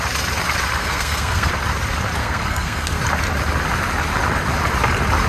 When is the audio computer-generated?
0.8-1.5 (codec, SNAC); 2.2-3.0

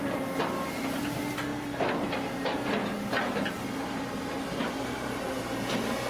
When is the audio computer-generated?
none

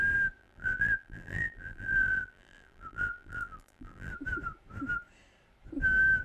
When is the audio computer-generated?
0.4-4.1 (vocoder, BigVGAN v2)

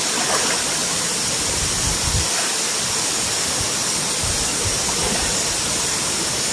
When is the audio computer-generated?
0.8-4.0 (vocoder, BigVGAN v2)

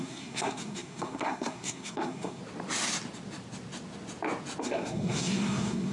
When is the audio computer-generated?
0.0-2.4 (codec, SNAC); 4.6-5.9

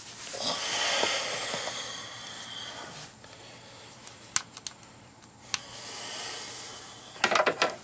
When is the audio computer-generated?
none

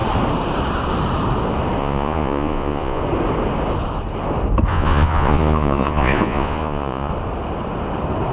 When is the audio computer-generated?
1.8-3.0 (vocoder, Vocos); 4.7-7.1